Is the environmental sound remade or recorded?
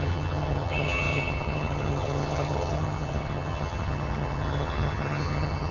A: remade